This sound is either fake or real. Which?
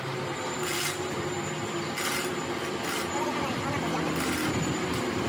real